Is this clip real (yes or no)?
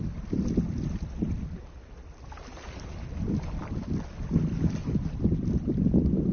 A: yes